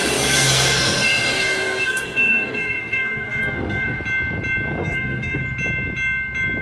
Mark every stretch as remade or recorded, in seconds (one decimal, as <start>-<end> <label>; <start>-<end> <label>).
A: 0.0-4.0 remade; 4.0-4.8 recorded; 4.8-5.4 remade; 5.4-6.6 recorded